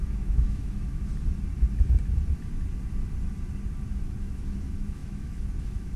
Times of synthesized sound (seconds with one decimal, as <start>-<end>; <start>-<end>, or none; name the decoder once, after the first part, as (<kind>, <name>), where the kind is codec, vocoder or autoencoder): 0.0-1.1 (autoencoder, DAC-VAE); 3.8-6.0